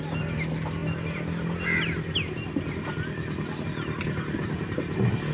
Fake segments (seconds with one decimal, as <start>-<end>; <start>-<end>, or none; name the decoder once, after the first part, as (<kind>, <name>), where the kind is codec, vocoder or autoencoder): none